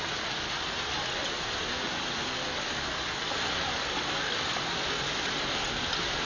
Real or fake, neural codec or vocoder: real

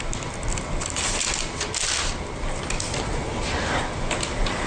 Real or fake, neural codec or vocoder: real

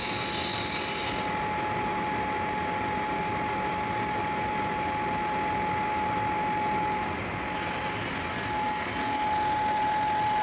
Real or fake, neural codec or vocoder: real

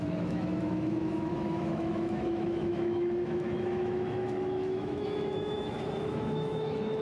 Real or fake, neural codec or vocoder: fake, autoencoder, DAC-VAE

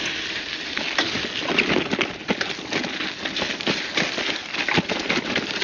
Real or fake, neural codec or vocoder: real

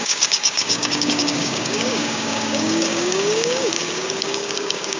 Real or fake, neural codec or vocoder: fake, codec, DAC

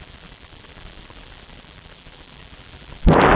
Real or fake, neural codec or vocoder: fake, vocoder, BigVGAN v2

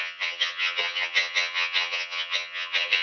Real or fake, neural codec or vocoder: fake, vocoder, HiFi-GAN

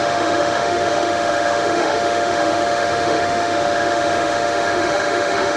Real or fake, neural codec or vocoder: fake, autoencoder, DAC-VAE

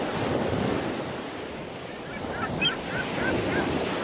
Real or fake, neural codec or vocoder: real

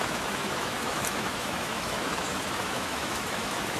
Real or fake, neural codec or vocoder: fake, autoencoder, DAC-VAE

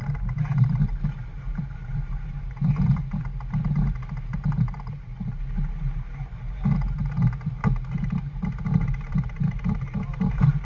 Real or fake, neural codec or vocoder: real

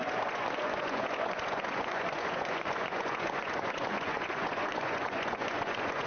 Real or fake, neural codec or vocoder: fake, vocoder, Vocos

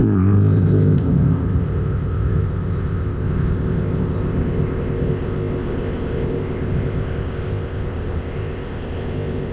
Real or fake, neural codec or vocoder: fake, codec, ZipCodec